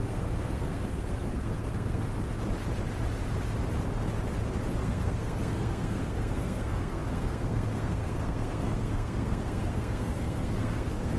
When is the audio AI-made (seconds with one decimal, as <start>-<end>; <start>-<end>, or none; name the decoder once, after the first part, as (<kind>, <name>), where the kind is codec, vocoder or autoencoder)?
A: 0.0-2.1 (codec, SNAC); 4.8-11.2